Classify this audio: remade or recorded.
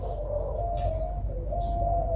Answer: recorded